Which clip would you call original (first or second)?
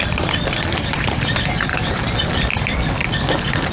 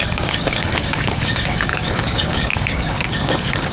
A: first